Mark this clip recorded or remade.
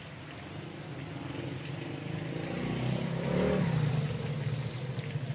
recorded